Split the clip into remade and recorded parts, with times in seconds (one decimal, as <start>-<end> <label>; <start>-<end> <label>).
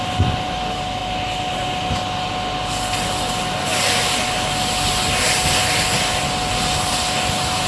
0.0-7.7 recorded